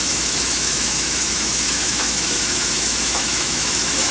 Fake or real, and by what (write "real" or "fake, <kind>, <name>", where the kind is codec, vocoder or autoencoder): fake, autoencoder, DAC-VAE